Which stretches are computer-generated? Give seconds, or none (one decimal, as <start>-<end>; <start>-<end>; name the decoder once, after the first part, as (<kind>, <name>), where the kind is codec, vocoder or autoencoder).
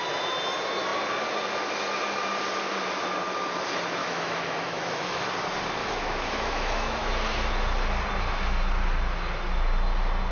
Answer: 4.0-5.3 (autoencoder, DAC-VAE); 5.8-7.1